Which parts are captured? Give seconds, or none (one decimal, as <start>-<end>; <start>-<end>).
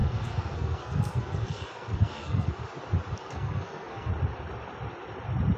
2.7-3.2; 4.1-5.6